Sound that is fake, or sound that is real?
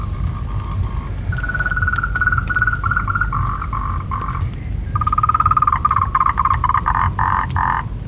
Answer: real